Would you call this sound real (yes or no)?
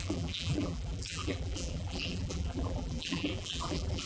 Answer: no